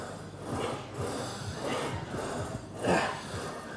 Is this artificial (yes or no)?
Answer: no